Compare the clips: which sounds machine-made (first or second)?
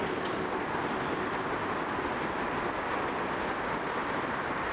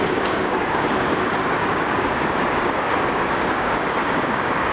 second